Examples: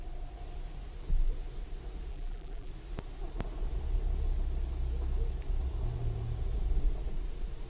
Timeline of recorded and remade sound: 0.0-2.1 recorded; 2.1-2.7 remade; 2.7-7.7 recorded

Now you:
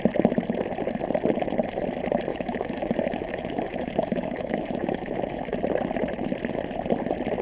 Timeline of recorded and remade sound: 0.0-2.3 recorded; 2.3-5.6 remade; 5.6-7.4 recorded

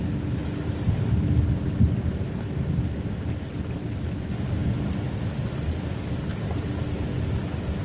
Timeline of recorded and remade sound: 0.0-7.8 recorded

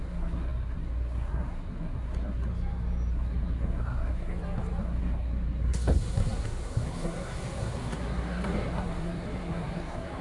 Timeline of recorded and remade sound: 0.0-2.5 remade; 2.5-3.1 recorded; 3.1-4.3 remade; 4.3-4.8 recorded; 4.8-10.2 remade

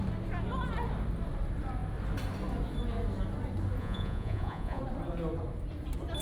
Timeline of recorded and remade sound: 0.0-3.8 recorded; 3.8-4.8 remade; 4.8-6.2 recorded

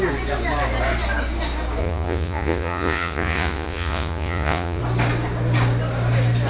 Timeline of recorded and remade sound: 0.0-1.8 recorded; 1.8-4.8 remade; 4.8-6.5 recorded

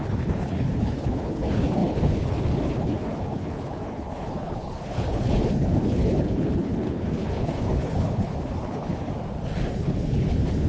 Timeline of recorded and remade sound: 0.0-9.1 remade; 9.1-9.7 recorded; 9.7-10.7 remade